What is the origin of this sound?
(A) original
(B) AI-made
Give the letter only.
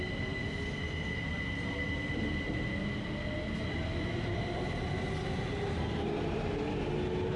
A